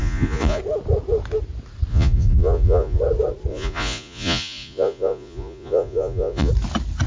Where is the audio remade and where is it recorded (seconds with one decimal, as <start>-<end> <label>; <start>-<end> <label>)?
0.0-0.6 remade; 0.6-1.9 recorded; 1.9-3.0 remade; 3.0-3.5 recorded; 3.5-6.5 remade; 6.5-7.1 recorded

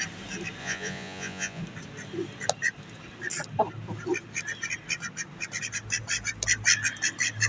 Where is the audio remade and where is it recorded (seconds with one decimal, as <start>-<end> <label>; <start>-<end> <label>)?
0.0-0.6 recorded; 0.6-1.6 remade; 1.6-7.5 recorded

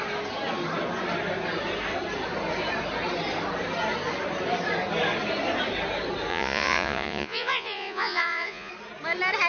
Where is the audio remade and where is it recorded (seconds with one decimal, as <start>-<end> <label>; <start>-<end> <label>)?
0.0-6.3 recorded; 6.3-8.7 remade; 8.7-9.5 recorded

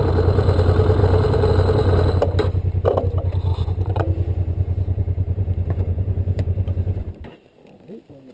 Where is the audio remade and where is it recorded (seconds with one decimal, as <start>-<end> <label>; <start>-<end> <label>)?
0.0-3.5 recorded; 3.5-7.1 remade; 7.1-8.3 recorded

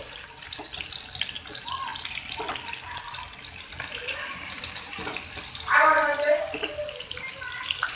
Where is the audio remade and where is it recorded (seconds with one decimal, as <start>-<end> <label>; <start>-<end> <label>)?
0.0-8.0 recorded

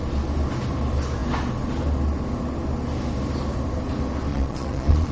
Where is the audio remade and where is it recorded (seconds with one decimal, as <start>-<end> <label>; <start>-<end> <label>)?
0.0-4.3 recorded; 4.3-5.1 remade

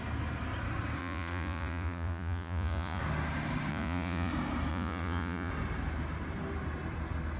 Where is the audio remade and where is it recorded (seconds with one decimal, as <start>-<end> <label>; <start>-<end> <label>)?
0.0-1.0 recorded; 1.0-3.0 remade; 3.0-3.7 recorded; 3.7-4.3 remade; 4.3-4.7 recorded; 4.7-5.5 remade; 5.5-7.4 recorded

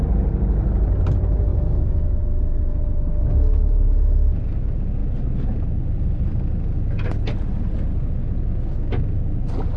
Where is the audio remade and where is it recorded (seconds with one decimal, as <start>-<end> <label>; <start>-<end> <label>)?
0.0-9.8 recorded